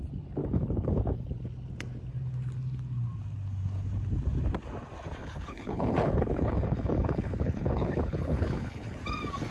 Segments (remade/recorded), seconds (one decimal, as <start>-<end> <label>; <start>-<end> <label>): 0.0-0.4 recorded; 0.4-1.3 remade; 1.3-5.2 recorded; 5.2-9.0 remade; 9.0-9.5 recorded